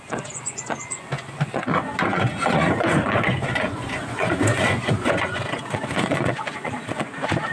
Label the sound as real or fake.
fake